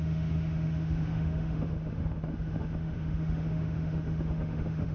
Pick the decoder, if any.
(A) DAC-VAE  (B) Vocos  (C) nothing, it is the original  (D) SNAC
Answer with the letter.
A